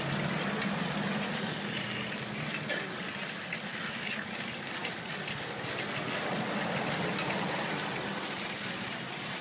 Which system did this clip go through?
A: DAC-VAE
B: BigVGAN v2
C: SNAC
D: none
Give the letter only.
D